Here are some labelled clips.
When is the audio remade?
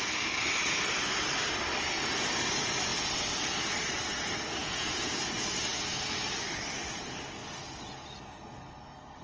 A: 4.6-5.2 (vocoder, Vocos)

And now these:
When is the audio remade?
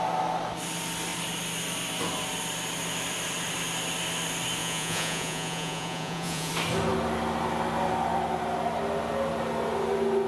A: 4.6-6.5 (vocoder, Vocos)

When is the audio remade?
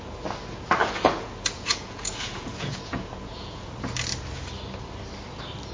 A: 0.8-3.7 (vocoder, Vocos)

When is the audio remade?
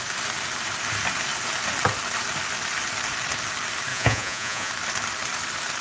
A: 3.9-4.7 (vocoder, Vocos)